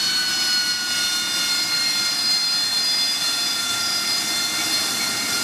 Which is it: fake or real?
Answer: real